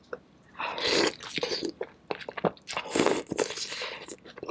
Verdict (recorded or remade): recorded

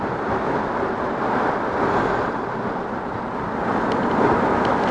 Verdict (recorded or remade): recorded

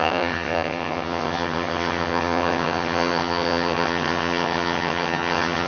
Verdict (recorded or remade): remade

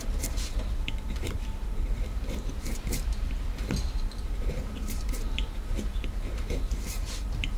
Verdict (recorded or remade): remade